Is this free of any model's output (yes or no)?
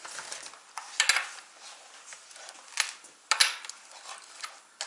yes